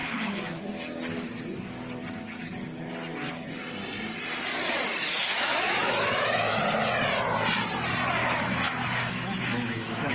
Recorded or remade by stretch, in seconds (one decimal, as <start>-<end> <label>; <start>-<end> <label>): 0.0-0.6 remade; 0.6-5.2 recorded; 5.2-6.6 remade; 6.6-8.2 recorded; 8.2-10.1 remade